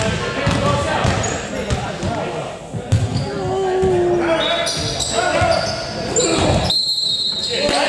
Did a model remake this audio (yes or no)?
no